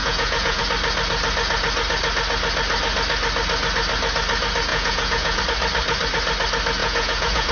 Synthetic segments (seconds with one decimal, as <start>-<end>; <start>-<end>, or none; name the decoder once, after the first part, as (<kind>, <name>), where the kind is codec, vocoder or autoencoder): 0.0-0.6 (vocoder, Vocos); 4.7-5.4; 6.8-7.5